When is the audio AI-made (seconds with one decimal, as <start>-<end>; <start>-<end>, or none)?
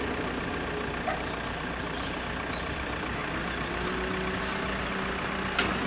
none